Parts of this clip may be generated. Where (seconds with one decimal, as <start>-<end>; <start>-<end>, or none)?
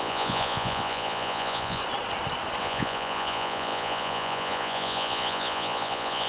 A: 0.0-1.8; 2.6-6.3